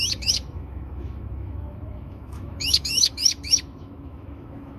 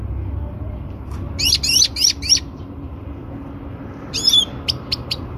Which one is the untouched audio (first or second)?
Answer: second